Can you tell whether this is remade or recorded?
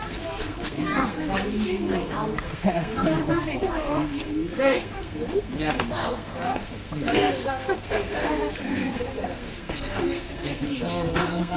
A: remade